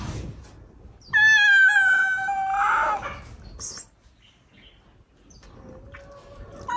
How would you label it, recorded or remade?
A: recorded